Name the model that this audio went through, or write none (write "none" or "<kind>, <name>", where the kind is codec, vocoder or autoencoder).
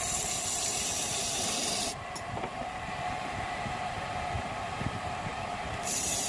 vocoder, BigVGAN v2